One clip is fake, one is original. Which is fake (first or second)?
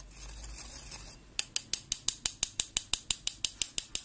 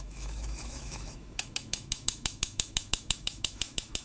second